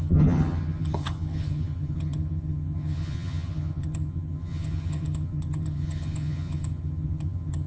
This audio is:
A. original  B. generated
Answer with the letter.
B